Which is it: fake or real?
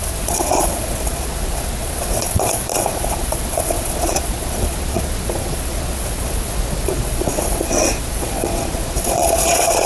fake